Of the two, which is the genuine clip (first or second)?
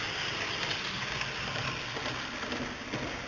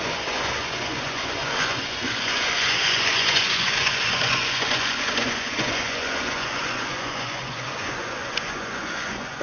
first